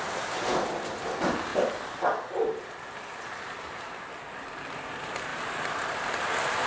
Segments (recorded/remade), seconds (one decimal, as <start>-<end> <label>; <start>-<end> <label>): 0.0-5.3 recorded; 5.3-5.8 remade; 5.8-6.7 recorded